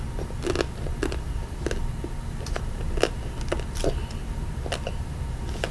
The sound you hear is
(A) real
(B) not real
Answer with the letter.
A